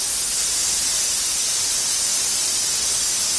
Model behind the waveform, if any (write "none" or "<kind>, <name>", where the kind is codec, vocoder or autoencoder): none